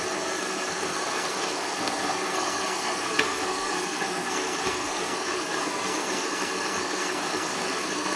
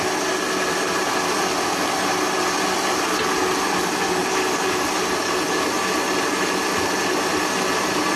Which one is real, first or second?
second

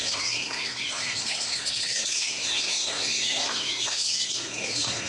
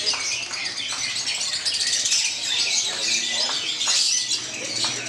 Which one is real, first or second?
second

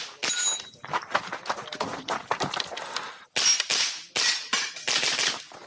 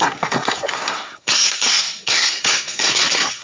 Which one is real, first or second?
first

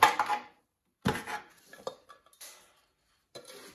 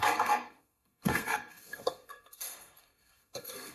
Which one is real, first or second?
first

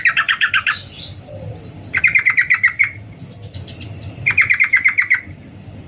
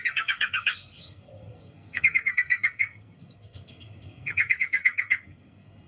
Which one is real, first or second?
first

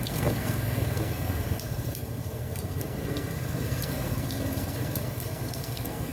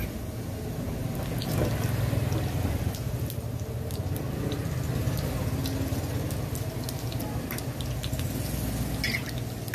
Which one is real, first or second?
second